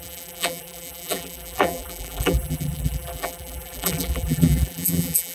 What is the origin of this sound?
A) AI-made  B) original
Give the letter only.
A